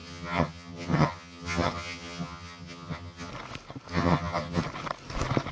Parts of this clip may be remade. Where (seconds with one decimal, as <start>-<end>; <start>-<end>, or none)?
0.0-3.3; 3.9-4.6